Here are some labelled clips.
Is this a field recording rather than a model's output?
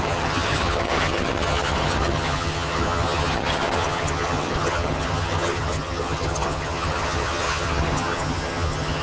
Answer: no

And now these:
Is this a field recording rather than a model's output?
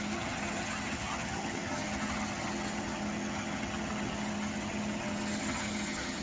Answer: no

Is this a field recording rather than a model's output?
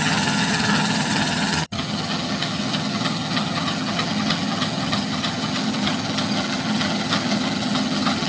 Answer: no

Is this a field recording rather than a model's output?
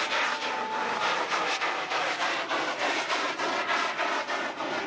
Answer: yes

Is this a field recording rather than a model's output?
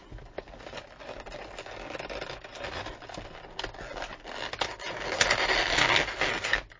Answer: yes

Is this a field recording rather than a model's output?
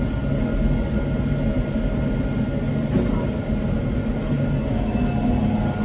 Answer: yes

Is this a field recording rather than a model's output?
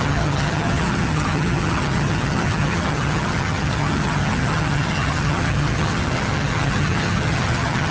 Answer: no